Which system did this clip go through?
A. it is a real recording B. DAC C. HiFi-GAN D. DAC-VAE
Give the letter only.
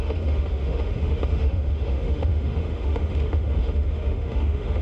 D